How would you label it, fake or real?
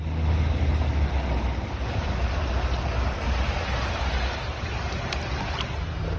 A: real